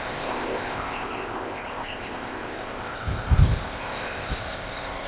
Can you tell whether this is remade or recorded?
remade